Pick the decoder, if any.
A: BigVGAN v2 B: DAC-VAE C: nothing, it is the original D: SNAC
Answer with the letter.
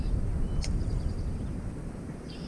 A